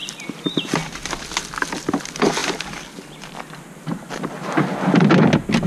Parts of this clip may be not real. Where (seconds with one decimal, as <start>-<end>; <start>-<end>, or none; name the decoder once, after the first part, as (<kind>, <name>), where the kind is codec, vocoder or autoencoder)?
none